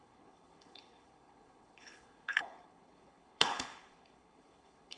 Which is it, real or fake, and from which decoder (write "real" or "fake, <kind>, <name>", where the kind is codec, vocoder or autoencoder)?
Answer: fake, codec, HILCodec